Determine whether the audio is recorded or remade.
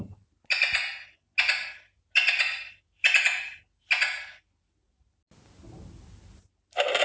recorded